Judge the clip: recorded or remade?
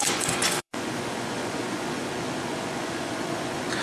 remade